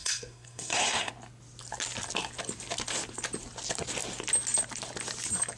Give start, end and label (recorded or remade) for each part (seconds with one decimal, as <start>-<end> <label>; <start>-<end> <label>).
0.0-1.1 remade; 1.1-5.6 recorded